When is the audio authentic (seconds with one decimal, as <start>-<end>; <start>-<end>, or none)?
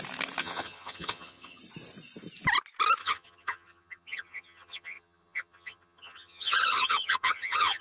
0.0-0.4; 1.6-3.0